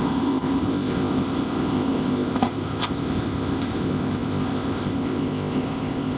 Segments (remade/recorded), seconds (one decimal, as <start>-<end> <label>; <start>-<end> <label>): 0.0-6.2 remade